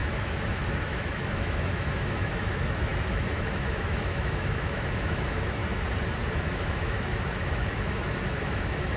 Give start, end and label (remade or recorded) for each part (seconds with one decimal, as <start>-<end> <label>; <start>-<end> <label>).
0.0-5.6 remade; 5.6-6.3 recorded; 6.3-9.0 remade